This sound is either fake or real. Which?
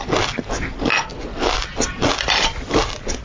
real